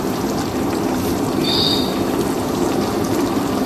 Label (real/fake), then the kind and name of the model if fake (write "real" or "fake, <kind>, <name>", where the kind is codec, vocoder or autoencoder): fake, vocoder, BigVGAN v2